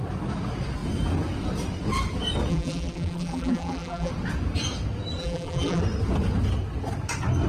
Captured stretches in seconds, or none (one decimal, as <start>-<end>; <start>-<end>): 0.0-2.5; 4.1-5.2; 5.8-7.5